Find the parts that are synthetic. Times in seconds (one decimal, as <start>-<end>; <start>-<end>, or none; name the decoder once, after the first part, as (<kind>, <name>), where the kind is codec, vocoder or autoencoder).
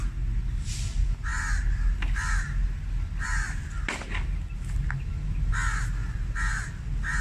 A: none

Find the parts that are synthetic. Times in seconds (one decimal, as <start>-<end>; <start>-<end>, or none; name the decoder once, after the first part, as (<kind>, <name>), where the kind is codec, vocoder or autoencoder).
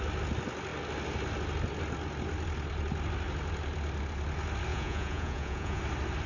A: 4.7-5.8 (vocoder, Vocos)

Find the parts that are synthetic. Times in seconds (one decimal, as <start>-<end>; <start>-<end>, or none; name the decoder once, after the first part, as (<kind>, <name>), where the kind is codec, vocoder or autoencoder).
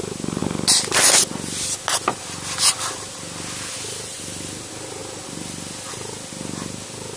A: none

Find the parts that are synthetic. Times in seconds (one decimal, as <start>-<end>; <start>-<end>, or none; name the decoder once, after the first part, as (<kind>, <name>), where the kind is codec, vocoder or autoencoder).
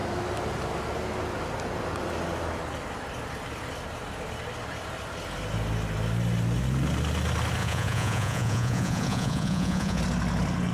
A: 7.6-10.0 (vocoder, Vocos)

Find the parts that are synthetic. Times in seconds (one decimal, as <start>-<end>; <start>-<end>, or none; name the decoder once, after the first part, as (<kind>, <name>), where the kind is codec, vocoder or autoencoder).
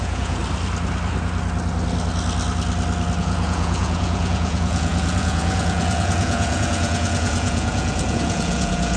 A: 0.0-0.4 (vocoder, Vocos); 3.2-9.0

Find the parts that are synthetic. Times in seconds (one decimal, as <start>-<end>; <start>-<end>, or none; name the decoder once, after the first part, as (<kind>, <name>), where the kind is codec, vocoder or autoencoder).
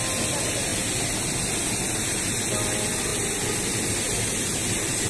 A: none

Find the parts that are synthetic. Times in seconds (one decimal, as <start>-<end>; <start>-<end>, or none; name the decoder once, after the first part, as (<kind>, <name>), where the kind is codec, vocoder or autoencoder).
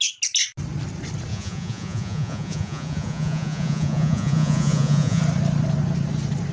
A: 1.3-5.2 (vocoder, Vocos)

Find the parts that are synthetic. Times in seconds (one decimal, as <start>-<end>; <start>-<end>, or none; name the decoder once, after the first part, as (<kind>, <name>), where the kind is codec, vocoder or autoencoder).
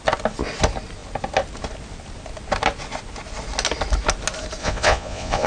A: 4.6-5.5 (vocoder, Vocos)